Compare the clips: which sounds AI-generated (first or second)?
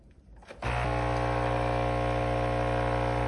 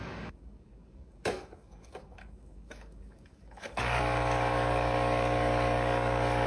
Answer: second